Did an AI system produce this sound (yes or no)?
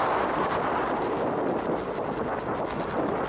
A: no